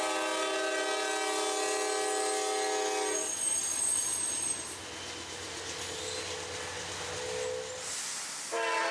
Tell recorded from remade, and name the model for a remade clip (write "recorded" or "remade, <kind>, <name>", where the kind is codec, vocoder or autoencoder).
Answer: recorded